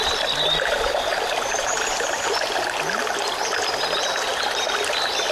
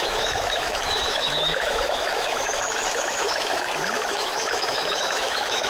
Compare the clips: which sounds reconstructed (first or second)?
second